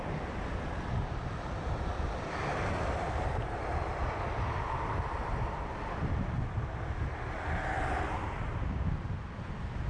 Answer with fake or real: real